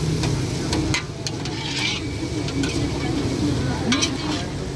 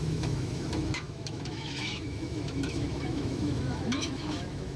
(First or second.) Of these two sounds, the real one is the first